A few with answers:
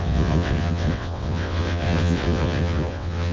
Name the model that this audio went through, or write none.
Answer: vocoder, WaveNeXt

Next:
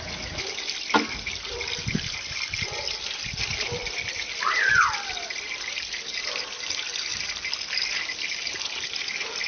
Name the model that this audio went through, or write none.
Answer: none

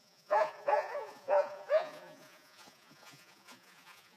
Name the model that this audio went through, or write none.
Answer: vocoder, Vocos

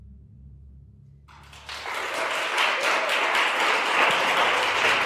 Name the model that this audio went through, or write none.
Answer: none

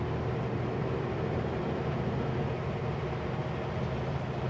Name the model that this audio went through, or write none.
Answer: none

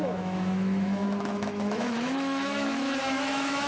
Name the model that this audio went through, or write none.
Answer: autoencoder, DAC-VAE